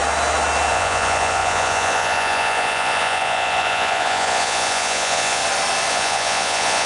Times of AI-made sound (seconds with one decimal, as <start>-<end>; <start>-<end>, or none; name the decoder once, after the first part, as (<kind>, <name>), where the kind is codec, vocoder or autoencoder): 0.7-5.4 (vocoder, Vocos); 5.9-6.9